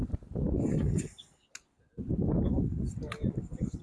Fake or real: real